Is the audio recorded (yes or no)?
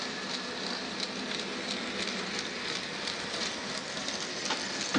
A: yes